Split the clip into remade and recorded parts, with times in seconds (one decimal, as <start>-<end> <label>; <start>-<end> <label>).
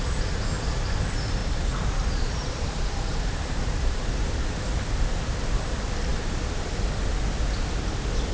0.0-1.4 recorded; 1.4-4.2 remade; 4.2-6.1 recorded; 6.1-6.7 remade; 6.7-8.3 recorded